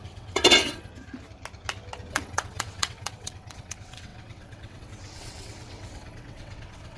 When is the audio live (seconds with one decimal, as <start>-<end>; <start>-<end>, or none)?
0.9-2.1